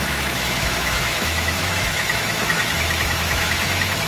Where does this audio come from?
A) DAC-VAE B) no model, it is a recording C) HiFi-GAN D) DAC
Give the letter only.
A